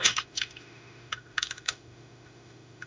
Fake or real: fake